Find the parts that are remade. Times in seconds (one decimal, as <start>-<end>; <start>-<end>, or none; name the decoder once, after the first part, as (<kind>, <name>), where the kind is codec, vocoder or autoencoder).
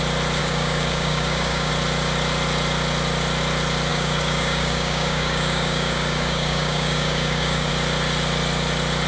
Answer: 0.4-1.7 (codec, DAC); 3.9-7.7